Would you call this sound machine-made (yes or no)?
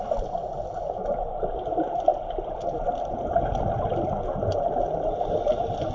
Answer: no